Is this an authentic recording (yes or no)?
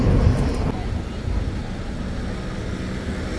yes